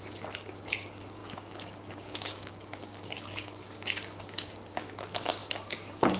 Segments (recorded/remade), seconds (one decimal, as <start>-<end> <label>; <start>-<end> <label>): 0.0-6.2 remade